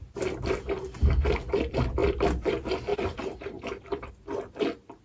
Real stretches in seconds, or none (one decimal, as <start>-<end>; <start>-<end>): 0.0-2.9; 4.1-5.0